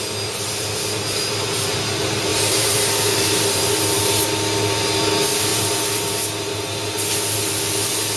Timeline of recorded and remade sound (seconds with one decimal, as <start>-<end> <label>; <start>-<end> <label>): 0.0-2.3 recorded; 2.3-3.7 remade; 3.7-5.5 recorded; 5.5-6.1 remade; 6.1-8.2 recorded